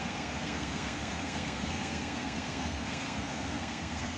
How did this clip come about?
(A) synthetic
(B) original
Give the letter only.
A